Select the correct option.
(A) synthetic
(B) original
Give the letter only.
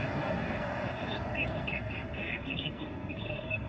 A